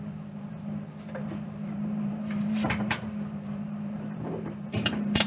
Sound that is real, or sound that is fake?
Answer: fake